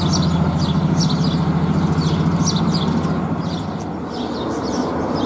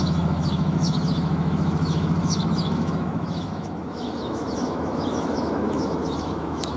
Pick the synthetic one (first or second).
second